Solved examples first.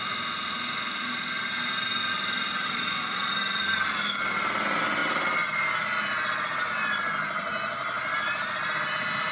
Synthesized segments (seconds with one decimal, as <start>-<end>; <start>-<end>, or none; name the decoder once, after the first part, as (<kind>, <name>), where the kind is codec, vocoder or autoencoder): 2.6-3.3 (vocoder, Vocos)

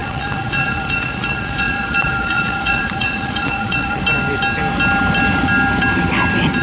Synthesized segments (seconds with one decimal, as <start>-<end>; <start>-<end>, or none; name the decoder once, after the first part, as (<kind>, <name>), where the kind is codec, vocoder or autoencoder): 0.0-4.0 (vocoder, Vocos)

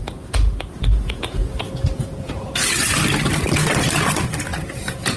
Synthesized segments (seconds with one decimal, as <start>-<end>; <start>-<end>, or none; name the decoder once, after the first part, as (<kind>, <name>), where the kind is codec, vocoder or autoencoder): 0.9-2.7 (vocoder, Vocos); 4.5-5.2